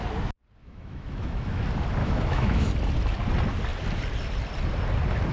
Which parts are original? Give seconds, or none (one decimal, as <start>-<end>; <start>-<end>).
0.0-0.6; 1.6-2.0; 2.7-5.3

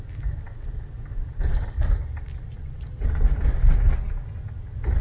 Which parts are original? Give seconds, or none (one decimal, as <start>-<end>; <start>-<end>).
0.0-5.0